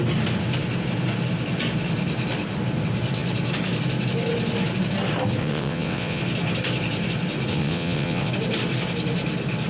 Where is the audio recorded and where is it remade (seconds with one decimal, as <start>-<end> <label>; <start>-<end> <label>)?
0.0-5.4 recorded; 5.4-6.2 remade; 6.2-7.5 recorded; 7.5-8.3 remade; 8.3-9.7 recorded